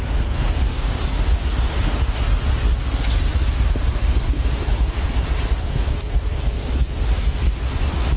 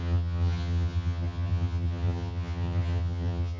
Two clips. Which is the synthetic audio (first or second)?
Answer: second